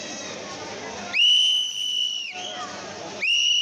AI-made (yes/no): no